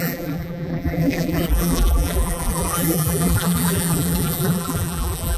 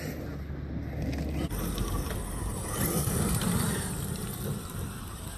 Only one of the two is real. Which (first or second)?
second